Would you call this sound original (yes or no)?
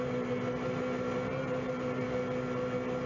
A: yes